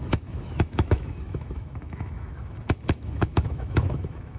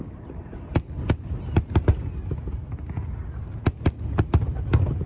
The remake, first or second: first